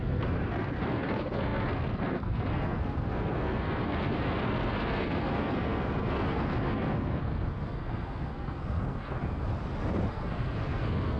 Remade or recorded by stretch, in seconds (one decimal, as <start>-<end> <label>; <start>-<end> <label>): 0.0-9.5 remade; 9.5-10.1 recorded; 10.1-11.2 remade